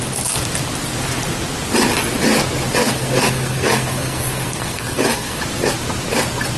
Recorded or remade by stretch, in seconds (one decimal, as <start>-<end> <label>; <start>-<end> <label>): 0.0-2.8 recorded; 2.8-5.4 remade; 5.4-6.6 recorded